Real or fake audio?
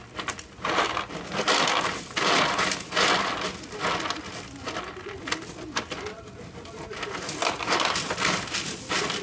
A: real